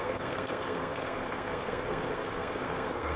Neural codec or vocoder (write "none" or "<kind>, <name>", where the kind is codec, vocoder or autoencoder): codec, SNAC